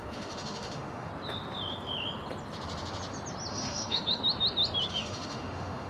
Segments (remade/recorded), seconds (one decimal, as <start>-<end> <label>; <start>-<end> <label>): 0.0-1.1 remade; 1.1-3.5 recorded; 3.5-4.2 remade; 4.2-4.9 recorded; 4.9-5.9 remade